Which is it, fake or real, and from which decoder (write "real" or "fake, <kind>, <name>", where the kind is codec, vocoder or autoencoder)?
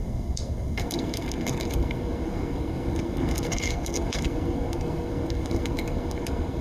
fake, codec, SNAC